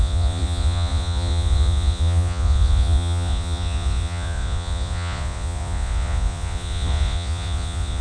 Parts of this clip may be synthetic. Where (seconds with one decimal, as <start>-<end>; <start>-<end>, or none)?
0.0-8.0